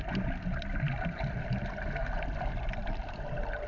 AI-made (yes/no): no